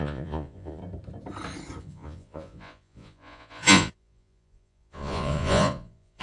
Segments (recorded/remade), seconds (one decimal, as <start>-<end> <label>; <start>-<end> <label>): 0.0-0.8 remade; 0.8-1.8 recorded; 1.8-6.2 remade